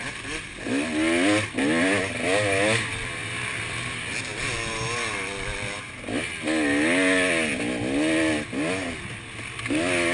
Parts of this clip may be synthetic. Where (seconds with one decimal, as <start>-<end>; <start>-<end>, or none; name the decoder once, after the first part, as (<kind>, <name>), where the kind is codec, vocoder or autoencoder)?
none